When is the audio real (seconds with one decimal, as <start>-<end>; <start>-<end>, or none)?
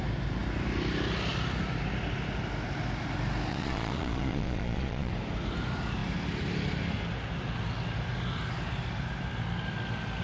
0.0-3.5; 5.1-10.2